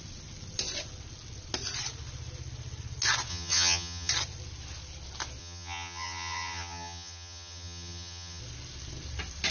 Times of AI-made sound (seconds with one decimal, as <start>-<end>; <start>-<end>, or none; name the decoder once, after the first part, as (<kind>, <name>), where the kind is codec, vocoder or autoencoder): 3.3-4.1 (vocoder, HiFi-GAN); 5.4-8.4